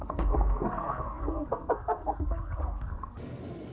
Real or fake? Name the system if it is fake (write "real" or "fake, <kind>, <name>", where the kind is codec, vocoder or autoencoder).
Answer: fake, codec, SNAC